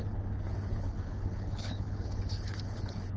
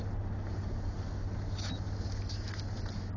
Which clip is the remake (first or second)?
first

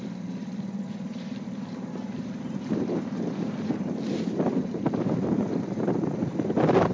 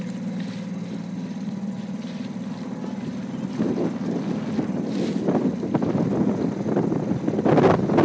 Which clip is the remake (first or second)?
first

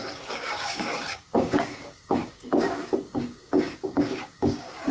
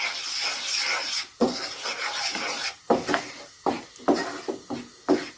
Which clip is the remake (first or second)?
first